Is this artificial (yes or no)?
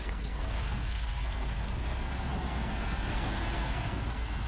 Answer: yes